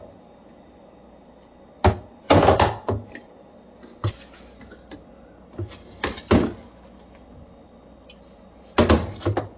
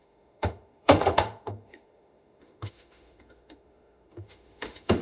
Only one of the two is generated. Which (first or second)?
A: second